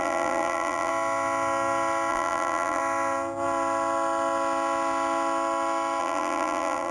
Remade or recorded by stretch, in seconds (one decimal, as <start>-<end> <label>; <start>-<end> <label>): 0.0-0.9 remade; 0.9-2.1 recorded; 2.1-2.8 remade; 2.8-6.0 recorded; 6.0-6.9 remade